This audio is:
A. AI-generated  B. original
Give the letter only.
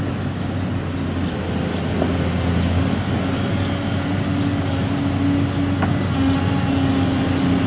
B